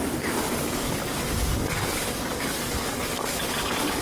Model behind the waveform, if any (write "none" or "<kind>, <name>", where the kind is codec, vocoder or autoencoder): codec, DAC